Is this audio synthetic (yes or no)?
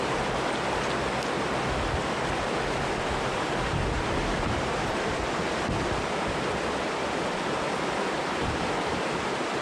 no